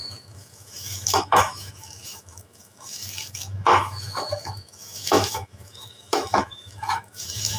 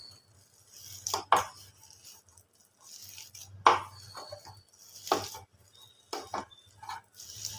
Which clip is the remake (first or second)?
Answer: first